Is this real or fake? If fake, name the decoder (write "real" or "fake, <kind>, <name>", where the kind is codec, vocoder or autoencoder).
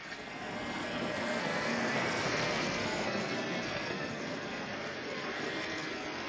fake, codec, SNAC